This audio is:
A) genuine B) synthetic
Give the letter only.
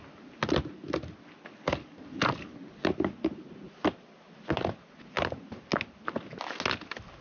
A